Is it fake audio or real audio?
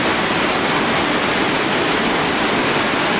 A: real